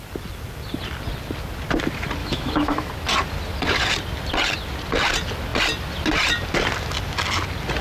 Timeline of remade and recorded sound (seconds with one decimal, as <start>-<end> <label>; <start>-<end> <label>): 0.0-2.2 recorded; 2.2-2.9 remade; 2.9-7.8 recorded